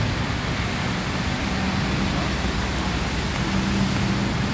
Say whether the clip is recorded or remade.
recorded